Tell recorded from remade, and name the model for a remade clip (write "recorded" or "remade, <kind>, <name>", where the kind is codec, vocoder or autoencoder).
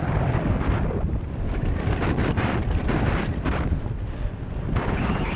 remade, vocoder, BigVGAN v2